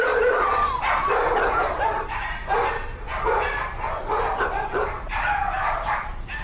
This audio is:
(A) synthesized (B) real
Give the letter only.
A